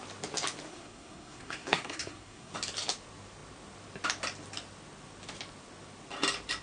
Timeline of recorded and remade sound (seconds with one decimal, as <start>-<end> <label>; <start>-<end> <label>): 0.0-0.7 recorded; 0.7-2.5 remade; 2.5-6.6 recorded